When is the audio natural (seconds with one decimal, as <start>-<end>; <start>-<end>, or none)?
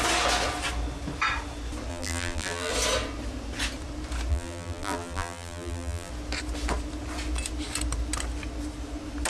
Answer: 0.0-1.9; 2.7-4.3; 6.1-9.3